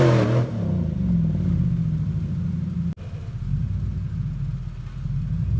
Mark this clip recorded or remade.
recorded